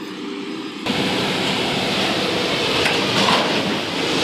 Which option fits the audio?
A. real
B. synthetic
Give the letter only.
A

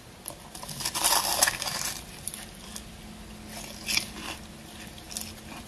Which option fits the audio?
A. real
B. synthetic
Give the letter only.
A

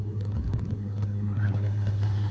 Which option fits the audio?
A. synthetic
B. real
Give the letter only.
A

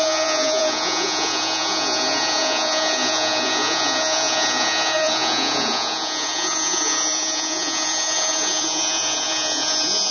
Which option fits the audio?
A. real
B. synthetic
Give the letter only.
B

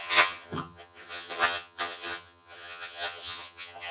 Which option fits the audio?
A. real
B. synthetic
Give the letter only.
B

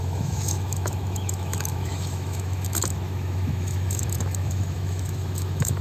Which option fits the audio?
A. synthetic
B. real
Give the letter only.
A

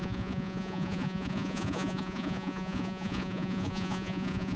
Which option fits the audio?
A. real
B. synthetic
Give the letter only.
B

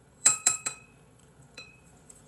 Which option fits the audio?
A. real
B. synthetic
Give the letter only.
B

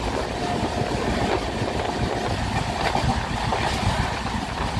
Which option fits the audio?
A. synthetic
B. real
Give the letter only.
B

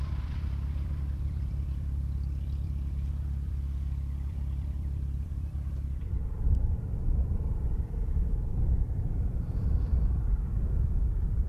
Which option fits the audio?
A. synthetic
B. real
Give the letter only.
A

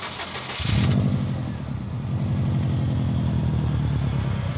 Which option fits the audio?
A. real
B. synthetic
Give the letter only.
A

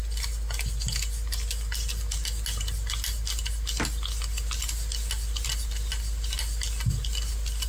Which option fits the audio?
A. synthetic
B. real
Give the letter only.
B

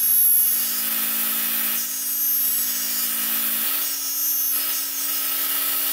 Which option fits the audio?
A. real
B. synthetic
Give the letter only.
A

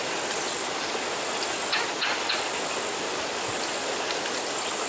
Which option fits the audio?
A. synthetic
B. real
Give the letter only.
B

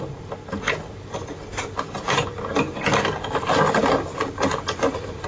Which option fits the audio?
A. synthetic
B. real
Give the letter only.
B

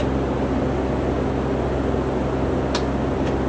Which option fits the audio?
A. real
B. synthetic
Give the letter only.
A